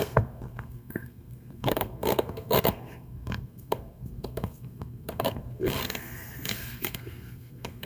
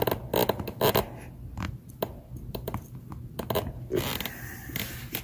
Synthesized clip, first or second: first